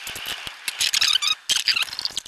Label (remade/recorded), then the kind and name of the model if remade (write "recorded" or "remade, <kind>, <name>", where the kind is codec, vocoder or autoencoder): recorded